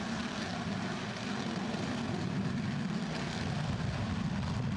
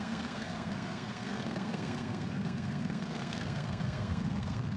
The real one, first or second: first